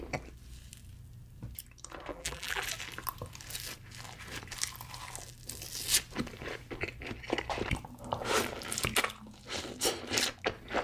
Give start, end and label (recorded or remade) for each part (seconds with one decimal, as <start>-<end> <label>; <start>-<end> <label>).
0.0-2.1 recorded; 2.1-2.6 remade; 2.6-10.8 recorded